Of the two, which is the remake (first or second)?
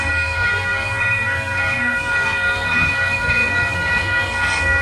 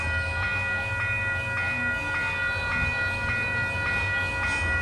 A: first